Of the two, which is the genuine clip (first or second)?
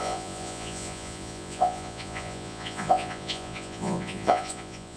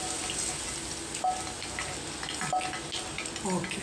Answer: second